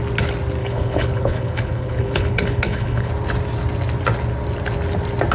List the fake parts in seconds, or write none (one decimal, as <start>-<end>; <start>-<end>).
0.6-3.1